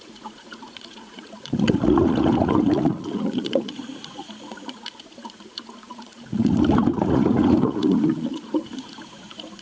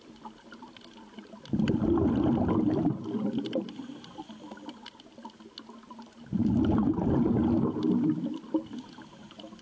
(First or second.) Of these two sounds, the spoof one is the first